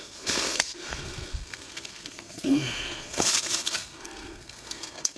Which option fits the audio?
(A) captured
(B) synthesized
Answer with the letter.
B